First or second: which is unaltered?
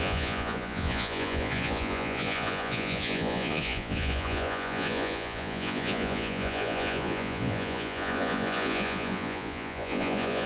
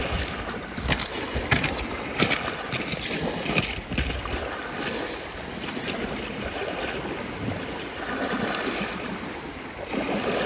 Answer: second